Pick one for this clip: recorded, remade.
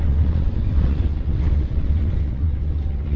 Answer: remade